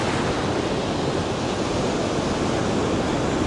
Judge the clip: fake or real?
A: real